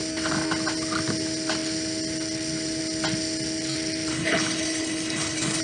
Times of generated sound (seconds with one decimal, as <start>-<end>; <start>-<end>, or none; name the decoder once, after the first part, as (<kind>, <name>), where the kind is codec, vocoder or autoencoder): 4.1-5.6 (codec, HILCodec)